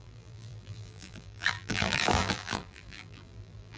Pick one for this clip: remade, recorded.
remade